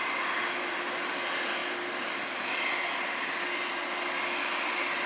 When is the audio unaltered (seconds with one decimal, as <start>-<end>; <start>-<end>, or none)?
0.0-5.1

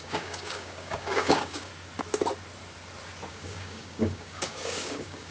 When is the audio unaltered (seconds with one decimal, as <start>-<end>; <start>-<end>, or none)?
1.7-3.3